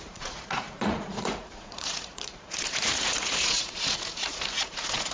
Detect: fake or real fake